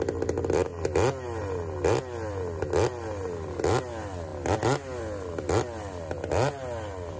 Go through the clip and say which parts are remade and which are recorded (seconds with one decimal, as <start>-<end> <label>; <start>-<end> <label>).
0.0-7.2 recorded